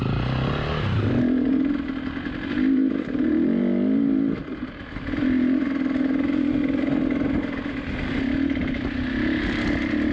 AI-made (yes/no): no